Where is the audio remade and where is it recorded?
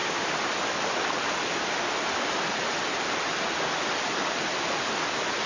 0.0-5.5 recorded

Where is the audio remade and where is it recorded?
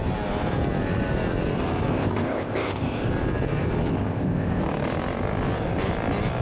0.0-1.9 recorded; 1.9-3.1 remade; 3.1-3.9 recorded; 3.9-4.6 remade; 4.6-6.4 recorded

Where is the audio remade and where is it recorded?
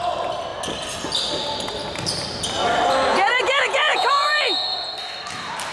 0.0-3.1 recorded; 3.1-4.9 remade; 4.9-5.7 recorded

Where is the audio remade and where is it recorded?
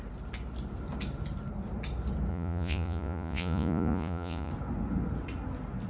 0.0-2.3 recorded; 2.3-4.5 remade; 4.5-5.9 recorded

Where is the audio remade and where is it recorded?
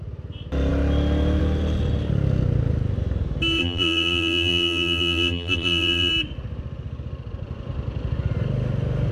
0.0-3.6 recorded; 3.6-6.1 remade; 6.1-9.1 recorded